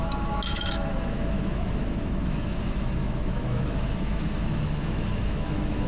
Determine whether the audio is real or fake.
fake